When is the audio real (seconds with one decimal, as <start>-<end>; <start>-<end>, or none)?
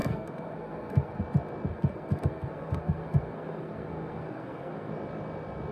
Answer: 1.2-1.7; 4.9-5.7